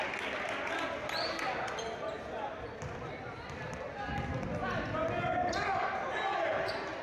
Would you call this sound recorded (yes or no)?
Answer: yes